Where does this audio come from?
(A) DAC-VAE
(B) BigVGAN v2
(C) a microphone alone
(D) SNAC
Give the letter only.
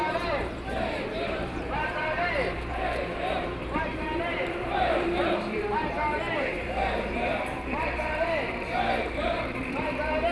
B